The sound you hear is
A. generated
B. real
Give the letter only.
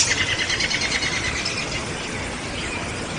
B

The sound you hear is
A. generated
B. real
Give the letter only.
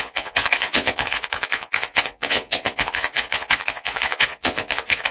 A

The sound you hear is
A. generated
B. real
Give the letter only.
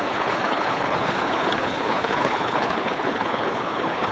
A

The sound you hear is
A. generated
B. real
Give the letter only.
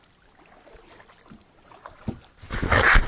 B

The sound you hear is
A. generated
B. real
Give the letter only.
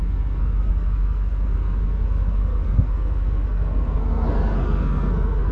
A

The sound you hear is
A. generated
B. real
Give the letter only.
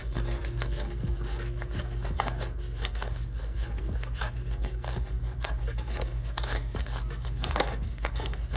A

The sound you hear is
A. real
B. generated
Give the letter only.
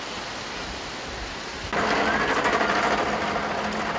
A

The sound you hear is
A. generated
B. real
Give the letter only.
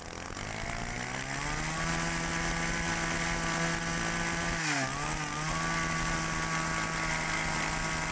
B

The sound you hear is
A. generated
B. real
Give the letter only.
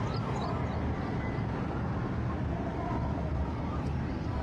B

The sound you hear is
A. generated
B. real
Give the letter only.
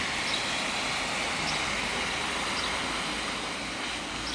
B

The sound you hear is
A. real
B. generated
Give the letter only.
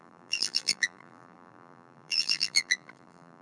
B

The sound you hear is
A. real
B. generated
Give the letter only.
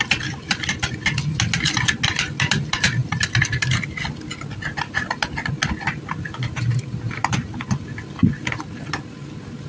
A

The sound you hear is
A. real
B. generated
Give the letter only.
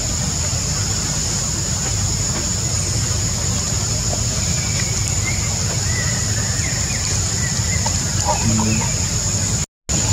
A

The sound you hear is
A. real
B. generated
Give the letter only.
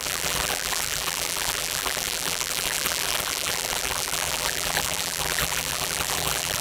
B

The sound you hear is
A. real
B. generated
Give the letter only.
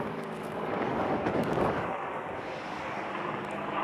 B